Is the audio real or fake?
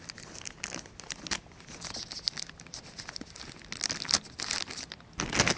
real